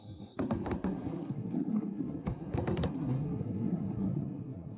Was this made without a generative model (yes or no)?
no